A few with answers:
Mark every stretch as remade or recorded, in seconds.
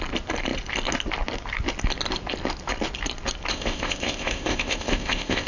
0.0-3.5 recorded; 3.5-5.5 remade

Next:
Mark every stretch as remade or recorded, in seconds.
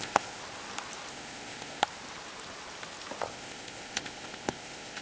0.0-0.4 remade; 0.4-1.1 recorded; 1.1-1.8 remade; 1.8-3.3 recorded; 3.3-5.0 remade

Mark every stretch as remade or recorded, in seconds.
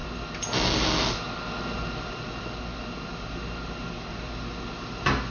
0.0-5.3 recorded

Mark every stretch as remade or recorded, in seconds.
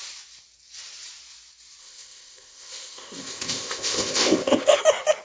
0.0-1.8 recorded; 1.8-4.8 remade; 4.8-5.2 recorded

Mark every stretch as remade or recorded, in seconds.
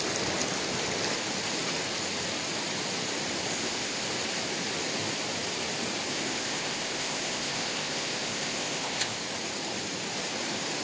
0.0-3.5 recorded; 3.5-4.1 remade; 4.1-6.1 recorded; 6.1-9.2 remade; 9.2-10.8 recorded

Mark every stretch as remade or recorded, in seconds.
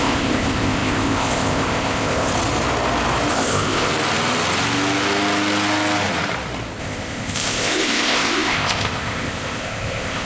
0.0-2.3 remade; 2.3-3.3 recorded; 3.3-3.9 remade; 3.9-6.8 recorded; 6.8-10.3 remade